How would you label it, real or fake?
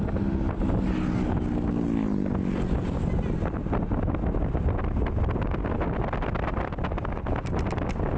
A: real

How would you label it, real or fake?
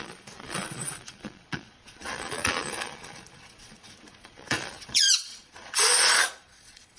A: fake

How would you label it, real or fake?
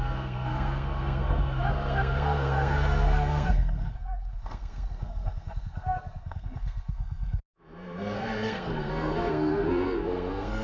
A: fake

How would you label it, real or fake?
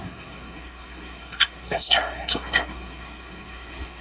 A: fake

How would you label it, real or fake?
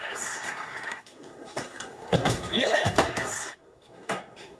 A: fake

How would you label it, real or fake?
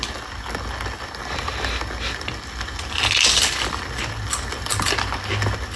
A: real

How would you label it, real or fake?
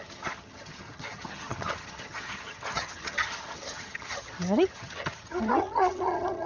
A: fake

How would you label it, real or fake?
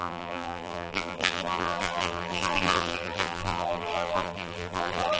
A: fake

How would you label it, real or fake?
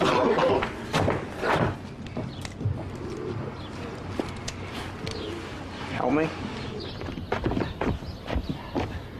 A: real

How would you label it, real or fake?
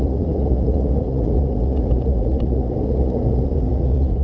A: fake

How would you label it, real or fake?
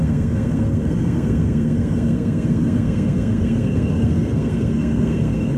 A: fake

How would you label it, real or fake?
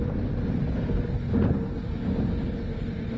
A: real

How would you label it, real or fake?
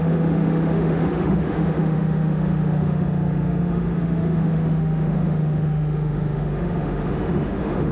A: fake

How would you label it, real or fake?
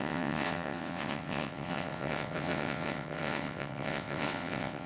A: fake